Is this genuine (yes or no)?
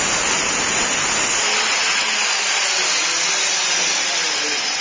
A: yes